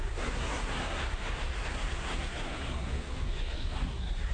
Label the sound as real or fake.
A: fake